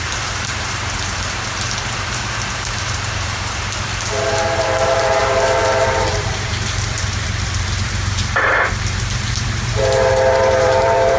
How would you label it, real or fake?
fake